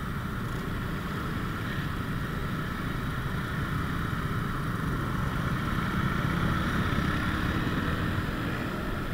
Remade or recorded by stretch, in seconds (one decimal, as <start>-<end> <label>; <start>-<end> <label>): 0.0-9.1 recorded